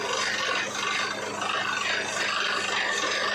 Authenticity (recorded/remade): recorded